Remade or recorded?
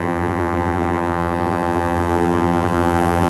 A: remade